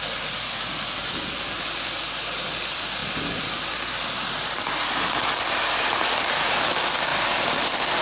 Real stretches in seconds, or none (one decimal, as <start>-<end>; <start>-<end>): 0.0-3.0; 6.3-8.0